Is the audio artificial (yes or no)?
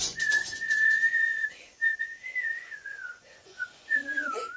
yes